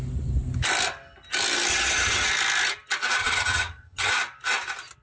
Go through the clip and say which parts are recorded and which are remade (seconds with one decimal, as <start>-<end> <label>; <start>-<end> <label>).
0.0-1.7 recorded; 1.7-2.3 remade; 2.3-3.2 recorded; 3.2-4.1 remade; 4.1-5.0 recorded